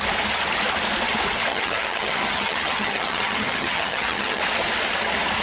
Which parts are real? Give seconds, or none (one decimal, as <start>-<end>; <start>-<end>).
0.0-1.5; 4.4-5.4